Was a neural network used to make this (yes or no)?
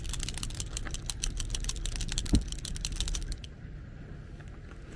no